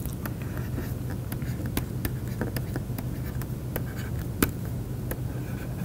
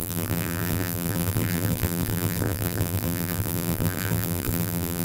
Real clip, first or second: first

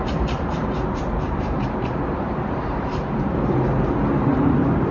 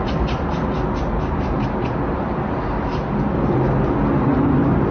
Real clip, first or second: second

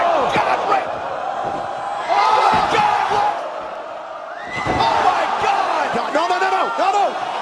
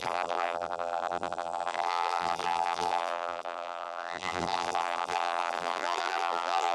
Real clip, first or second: first